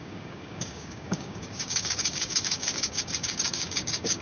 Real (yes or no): no